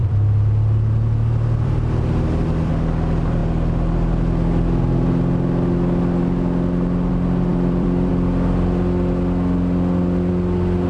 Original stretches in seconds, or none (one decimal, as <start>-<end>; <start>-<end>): 2.7-7.5; 8.1-10.9